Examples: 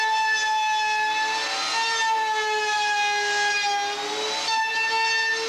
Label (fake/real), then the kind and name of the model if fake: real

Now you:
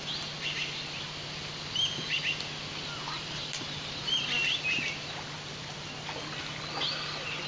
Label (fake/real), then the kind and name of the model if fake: real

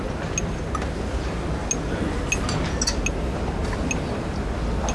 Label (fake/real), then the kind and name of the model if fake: real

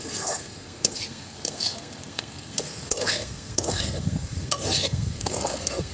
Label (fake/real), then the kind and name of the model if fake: fake, codec, SNAC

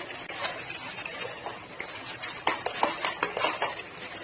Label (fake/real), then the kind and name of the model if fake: real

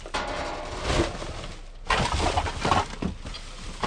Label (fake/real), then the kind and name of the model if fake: real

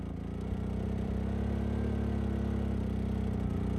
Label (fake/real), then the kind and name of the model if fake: real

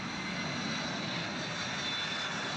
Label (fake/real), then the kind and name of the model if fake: real